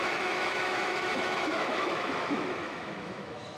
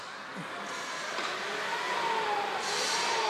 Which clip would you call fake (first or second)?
first